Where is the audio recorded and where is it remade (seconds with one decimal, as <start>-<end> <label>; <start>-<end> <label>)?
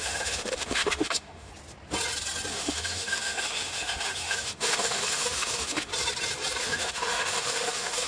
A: 0.0-1.5 remade; 1.5-2.5 recorded; 2.5-5.9 remade; 5.9-6.6 recorded; 6.6-8.1 remade